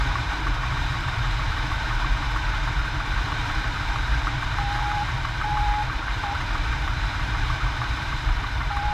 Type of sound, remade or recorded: remade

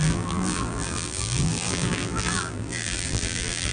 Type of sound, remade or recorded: remade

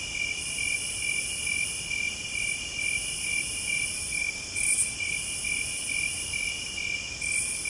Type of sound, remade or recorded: remade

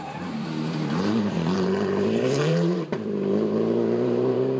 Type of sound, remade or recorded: remade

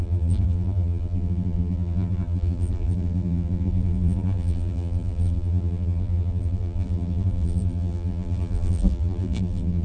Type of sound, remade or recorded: remade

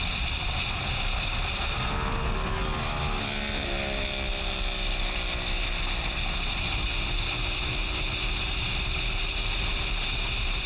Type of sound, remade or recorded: recorded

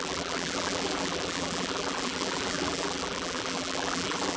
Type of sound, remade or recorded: remade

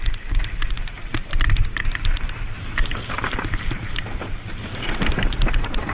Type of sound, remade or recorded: remade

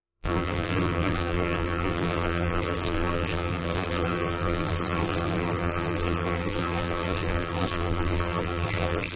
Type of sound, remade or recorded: remade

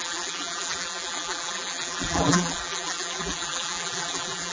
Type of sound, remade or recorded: remade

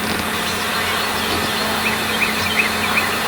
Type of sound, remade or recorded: recorded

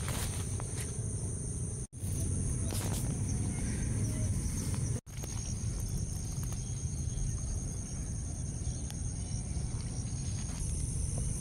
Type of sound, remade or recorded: recorded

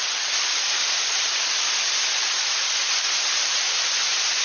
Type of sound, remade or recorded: remade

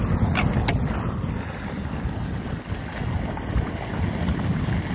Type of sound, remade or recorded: recorded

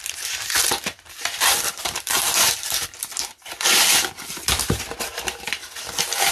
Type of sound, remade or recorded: remade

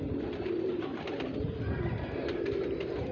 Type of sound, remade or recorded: recorded